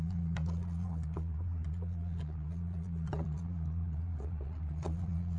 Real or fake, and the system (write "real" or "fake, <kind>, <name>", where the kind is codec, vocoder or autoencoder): fake, vocoder, Vocos